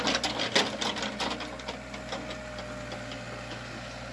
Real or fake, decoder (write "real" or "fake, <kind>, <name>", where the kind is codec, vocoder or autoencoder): real